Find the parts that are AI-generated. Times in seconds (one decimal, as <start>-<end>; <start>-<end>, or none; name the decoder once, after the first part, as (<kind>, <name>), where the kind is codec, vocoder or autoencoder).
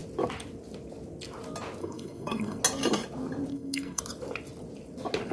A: 1.8-2.6 (codec, SNAC); 3.5-4.0